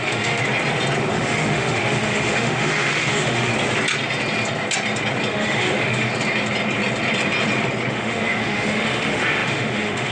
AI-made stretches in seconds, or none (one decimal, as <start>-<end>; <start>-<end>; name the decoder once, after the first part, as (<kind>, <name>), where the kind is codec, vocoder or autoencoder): 0.0-0.4 (autoencoder, DAC-VAE); 1.1-3.5; 5.3-6.1; 7.9-10.1

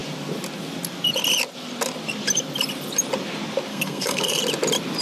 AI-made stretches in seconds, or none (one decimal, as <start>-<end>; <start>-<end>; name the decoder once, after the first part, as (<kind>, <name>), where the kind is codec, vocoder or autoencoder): 3.7-4.4 (codec, SNAC)